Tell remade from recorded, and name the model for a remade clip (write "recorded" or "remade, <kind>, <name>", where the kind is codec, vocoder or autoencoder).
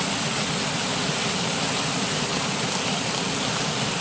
recorded